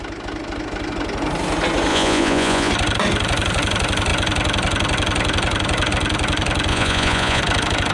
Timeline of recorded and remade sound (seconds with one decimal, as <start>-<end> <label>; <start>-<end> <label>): 0.0-1.9 recorded; 1.9-2.7 remade; 2.7-6.7 recorded; 6.7-7.4 remade; 7.4-7.9 recorded